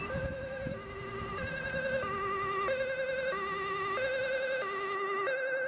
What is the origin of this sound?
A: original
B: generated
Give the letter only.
A